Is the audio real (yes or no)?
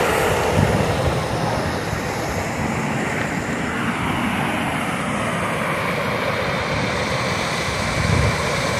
yes